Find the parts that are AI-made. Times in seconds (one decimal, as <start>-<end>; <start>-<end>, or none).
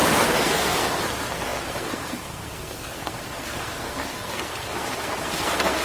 0.0-5.8